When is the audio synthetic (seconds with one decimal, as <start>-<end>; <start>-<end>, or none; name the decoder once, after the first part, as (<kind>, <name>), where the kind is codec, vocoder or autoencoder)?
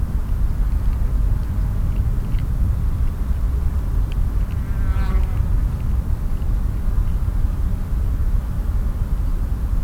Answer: none